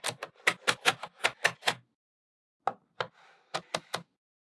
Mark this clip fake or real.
real